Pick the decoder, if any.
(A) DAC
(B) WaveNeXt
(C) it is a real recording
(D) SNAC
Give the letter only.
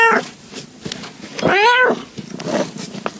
C